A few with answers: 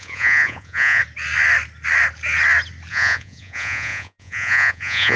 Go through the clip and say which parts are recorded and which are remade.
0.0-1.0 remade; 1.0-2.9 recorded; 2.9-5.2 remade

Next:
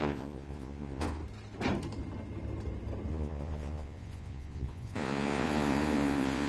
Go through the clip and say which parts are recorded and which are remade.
0.0-1.2 remade; 1.2-3.1 recorded; 3.1-6.5 remade

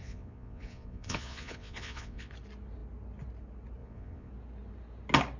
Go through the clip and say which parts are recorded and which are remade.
0.0-2.3 remade; 2.3-3.8 recorded; 3.8-4.3 remade; 4.3-5.4 recorded

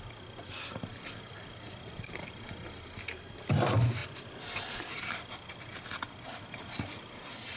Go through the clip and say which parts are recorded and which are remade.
0.0-7.6 recorded

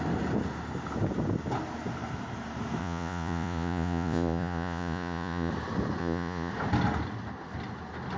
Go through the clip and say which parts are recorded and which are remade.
0.0-2.8 recorded; 2.8-5.5 remade; 5.5-6.0 recorded; 6.0-6.5 remade; 6.5-8.2 recorded

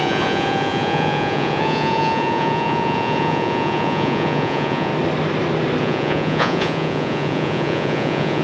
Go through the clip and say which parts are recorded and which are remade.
0.0-4.9 remade; 4.9-5.8 recorded; 5.8-8.4 remade